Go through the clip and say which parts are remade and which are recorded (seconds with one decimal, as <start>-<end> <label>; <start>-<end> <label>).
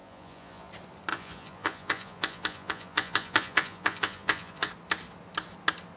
0.0-0.7 remade; 0.7-1.1 recorded; 1.1-4.7 remade; 4.7-6.0 recorded